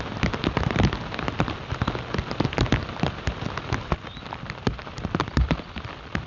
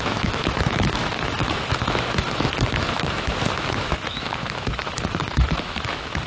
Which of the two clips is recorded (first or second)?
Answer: first